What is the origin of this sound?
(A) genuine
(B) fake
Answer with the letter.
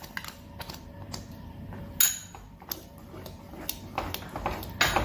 A